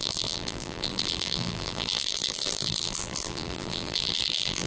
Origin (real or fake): fake